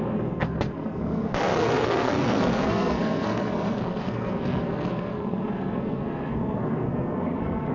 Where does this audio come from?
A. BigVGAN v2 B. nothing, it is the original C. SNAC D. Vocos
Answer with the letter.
C